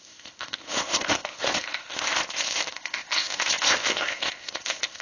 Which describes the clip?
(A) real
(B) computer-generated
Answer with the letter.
B